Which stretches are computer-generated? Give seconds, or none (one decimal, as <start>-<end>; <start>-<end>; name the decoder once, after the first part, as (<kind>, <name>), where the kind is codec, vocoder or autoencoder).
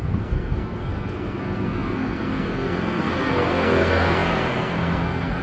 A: 0.0-5.4 (codec, SNAC)